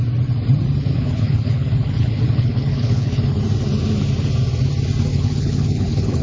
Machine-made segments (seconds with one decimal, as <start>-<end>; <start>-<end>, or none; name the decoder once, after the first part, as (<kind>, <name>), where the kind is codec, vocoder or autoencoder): 0.9-3.4 (codec, HILCodec); 5.1-6.2